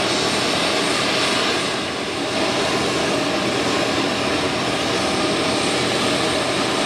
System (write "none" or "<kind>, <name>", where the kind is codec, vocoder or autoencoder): none